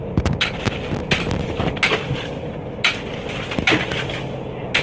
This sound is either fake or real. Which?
real